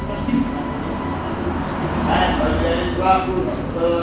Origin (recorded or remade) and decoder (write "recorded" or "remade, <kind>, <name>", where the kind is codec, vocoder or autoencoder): recorded